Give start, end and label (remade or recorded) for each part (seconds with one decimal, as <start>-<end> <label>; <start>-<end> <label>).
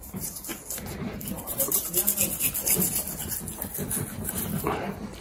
0.0-0.5 remade; 0.5-1.3 recorded; 1.3-1.9 remade; 1.9-4.3 recorded; 4.3-5.2 remade